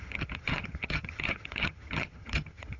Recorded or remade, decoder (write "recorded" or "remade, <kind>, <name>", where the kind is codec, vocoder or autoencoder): remade, vocoder, HiFi-GAN